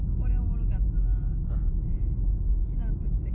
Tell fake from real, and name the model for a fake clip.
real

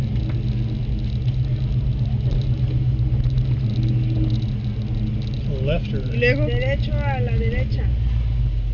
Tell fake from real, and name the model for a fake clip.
real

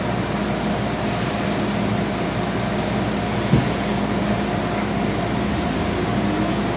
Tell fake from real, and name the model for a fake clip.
real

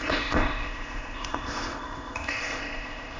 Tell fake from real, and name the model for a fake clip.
fake, codec, ZipCodec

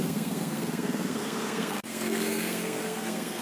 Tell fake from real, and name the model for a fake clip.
fake, codec, SNAC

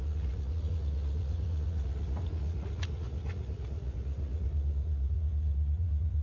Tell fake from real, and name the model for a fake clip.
fake, vocoder, Vocos